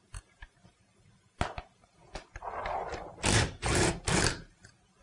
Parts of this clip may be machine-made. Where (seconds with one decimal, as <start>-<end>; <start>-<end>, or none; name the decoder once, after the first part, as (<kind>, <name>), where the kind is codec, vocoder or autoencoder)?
none